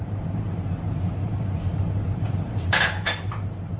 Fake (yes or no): yes